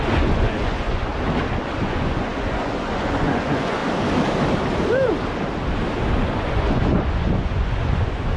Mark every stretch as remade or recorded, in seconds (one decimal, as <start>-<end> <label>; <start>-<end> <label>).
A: 0.0-1.1 remade; 1.1-1.8 recorded; 1.8-3.8 remade; 3.8-6.1 recorded; 6.1-8.4 remade

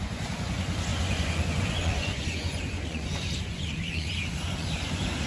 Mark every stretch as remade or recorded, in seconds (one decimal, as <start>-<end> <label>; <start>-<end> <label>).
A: 0.0-5.3 remade

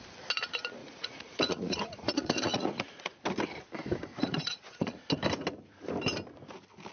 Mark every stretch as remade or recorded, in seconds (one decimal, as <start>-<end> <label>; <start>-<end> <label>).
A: 0.0-0.8 recorded; 0.8-3.2 remade; 3.2-4.1 recorded; 4.1-5.0 remade; 5.0-6.9 recorded

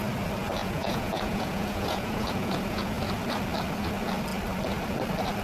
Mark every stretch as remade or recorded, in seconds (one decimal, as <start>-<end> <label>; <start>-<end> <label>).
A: 0.0-0.6 recorded; 0.6-2.9 remade; 2.9-5.4 recorded

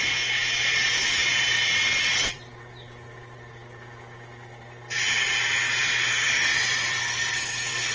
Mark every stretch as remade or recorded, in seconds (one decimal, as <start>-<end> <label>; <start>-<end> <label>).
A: 0.0-7.9 recorded

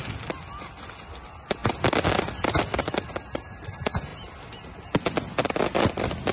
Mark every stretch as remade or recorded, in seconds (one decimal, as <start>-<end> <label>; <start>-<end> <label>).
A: 0.0-6.3 recorded

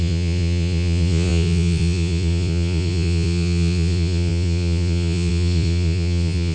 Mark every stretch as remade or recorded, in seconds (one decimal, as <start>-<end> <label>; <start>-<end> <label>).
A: 0.0-6.5 remade